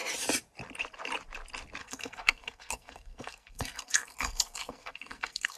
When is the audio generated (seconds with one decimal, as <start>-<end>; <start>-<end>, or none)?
1.8-5.6